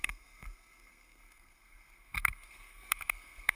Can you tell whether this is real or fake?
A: fake